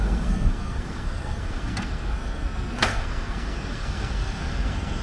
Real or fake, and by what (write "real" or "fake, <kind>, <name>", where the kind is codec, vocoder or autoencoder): fake, codec, SNAC